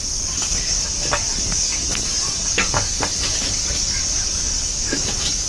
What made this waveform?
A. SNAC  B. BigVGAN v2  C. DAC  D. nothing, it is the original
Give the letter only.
C